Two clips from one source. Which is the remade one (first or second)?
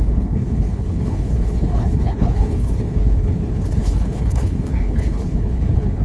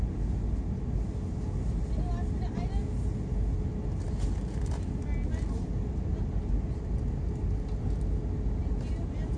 first